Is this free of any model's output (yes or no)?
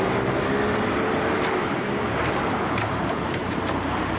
no